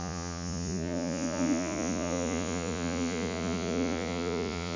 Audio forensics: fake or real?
fake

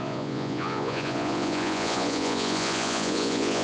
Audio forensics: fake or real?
fake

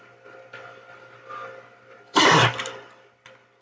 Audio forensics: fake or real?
real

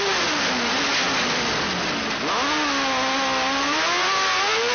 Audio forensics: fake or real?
real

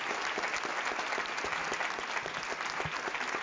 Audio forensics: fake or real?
real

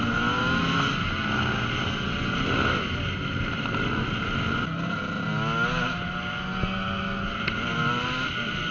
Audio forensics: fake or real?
real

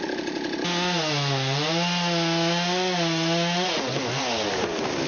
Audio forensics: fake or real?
real